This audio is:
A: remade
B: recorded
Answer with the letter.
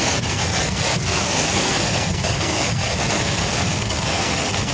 A